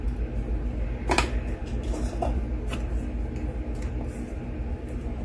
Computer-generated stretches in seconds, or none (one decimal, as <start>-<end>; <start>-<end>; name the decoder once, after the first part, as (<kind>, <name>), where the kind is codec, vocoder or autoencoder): none